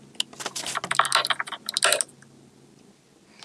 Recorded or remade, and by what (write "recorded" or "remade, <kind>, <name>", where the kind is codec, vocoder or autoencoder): recorded